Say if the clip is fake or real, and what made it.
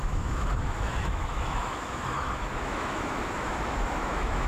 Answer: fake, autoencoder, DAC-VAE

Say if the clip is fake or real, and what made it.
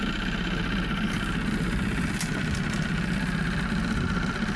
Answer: real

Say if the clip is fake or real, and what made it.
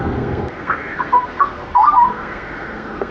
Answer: fake, codec, SNAC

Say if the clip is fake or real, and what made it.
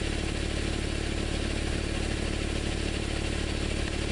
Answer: real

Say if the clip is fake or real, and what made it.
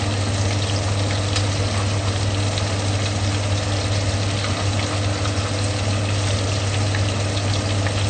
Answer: real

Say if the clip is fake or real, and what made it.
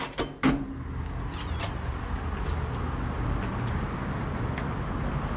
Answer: real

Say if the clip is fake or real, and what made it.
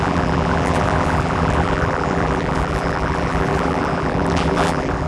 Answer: fake, vocoder, BigVGAN v2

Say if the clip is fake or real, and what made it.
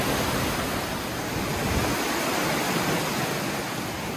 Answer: real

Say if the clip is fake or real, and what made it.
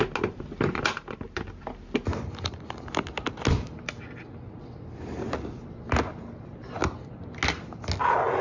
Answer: real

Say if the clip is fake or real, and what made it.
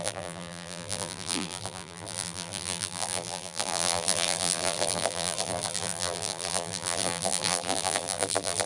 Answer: fake, vocoder, BigVGAN v2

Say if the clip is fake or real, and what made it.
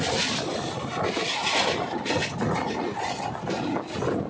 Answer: real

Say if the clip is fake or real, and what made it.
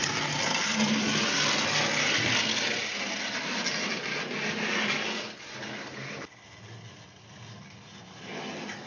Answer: real